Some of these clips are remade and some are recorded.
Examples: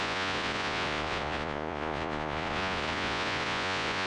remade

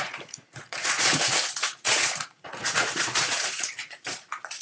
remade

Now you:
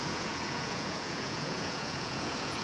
remade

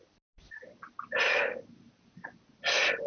recorded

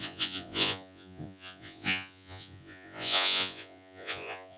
remade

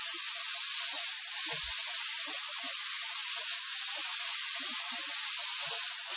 recorded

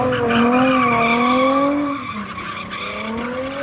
recorded